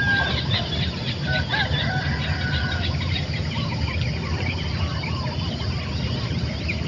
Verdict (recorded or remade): recorded